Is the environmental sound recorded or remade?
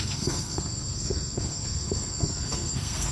remade